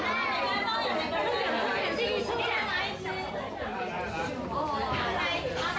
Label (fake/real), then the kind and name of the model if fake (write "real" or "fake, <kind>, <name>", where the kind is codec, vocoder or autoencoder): real